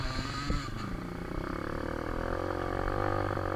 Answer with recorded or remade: recorded